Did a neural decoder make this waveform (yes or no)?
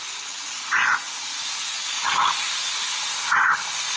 no